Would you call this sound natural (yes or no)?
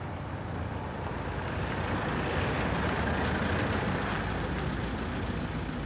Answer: yes